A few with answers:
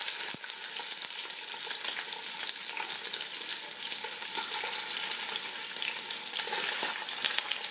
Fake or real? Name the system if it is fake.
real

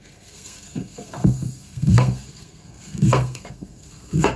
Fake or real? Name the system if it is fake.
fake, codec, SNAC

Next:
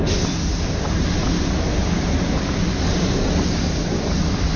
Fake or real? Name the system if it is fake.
real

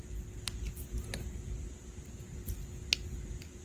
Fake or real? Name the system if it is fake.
real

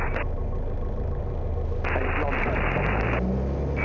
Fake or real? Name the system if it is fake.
real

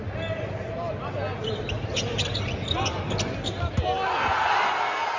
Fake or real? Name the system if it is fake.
real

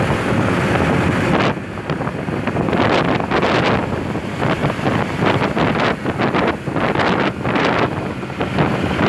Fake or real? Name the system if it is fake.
real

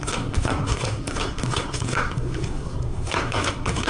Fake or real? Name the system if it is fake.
fake, codec, SNAC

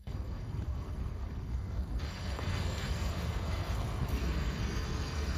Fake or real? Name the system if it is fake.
fake, codec, SNAC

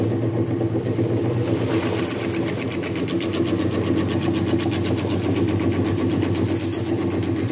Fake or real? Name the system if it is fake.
real